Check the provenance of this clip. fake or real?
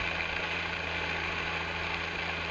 real